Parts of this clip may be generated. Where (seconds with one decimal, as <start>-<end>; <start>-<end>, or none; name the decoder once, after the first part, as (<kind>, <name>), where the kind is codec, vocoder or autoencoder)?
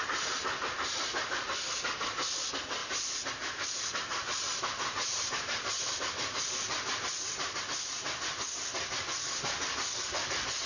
2.8-7.6 (vocoder, BigVGAN v2)